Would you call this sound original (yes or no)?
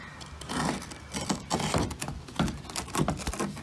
yes